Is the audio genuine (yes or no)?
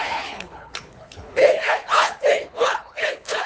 no